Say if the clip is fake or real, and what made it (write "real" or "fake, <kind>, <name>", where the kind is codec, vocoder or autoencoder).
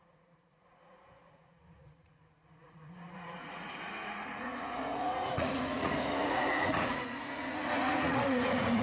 fake, vocoder, Vocos